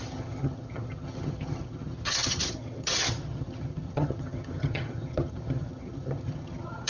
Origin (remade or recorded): remade